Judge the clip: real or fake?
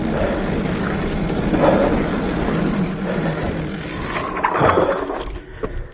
real